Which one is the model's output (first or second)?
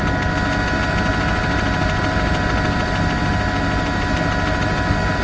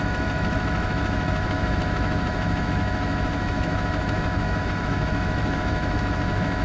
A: second